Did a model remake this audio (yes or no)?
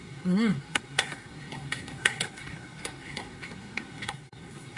yes